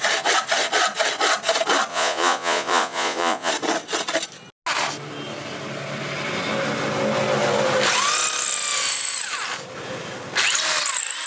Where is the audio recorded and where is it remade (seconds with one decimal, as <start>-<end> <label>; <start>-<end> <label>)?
0.0-1.9 recorded; 1.9-3.5 remade; 3.5-11.3 recorded